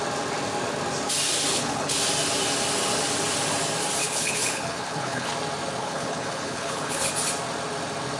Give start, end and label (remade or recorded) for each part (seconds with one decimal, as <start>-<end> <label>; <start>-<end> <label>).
0.0-1.5 recorded; 1.5-2.0 remade; 2.0-4.0 recorded; 4.0-5.3 remade; 5.3-5.8 recorded; 5.8-7.1 remade; 7.1-8.2 recorded